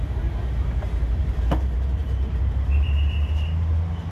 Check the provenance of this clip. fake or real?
fake